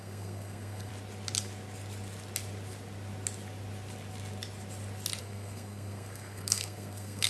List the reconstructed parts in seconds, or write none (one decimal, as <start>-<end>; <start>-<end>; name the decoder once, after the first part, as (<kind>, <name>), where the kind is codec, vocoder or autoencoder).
0.0-0.9 (codec, SNAC); 5.2-7.3